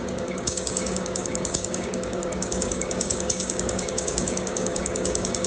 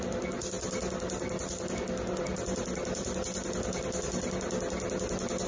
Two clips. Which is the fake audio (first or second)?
first